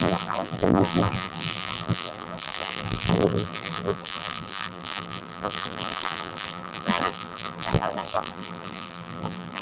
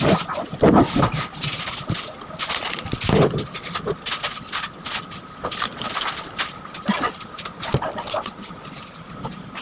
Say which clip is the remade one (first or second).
first